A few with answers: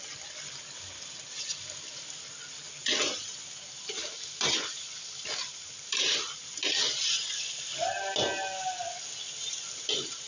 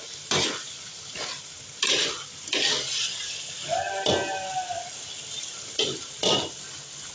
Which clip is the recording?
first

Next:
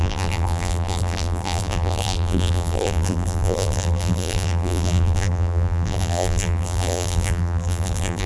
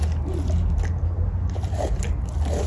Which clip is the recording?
second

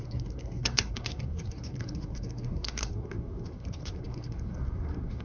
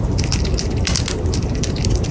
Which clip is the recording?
second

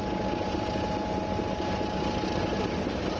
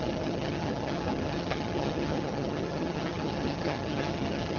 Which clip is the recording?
first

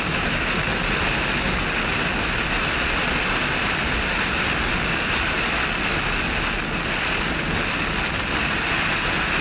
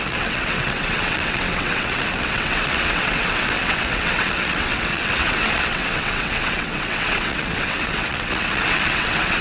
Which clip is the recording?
first